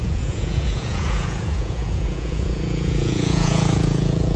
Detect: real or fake fake